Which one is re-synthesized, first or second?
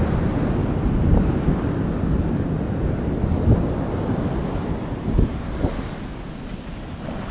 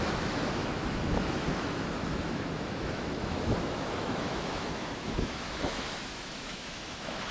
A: second